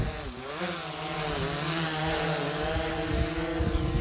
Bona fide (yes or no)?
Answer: yes